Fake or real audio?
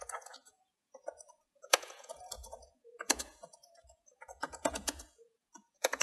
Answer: fake